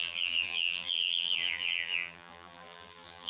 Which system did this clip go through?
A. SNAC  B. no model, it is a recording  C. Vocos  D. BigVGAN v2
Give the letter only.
D